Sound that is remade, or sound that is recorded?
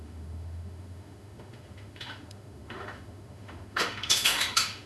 remade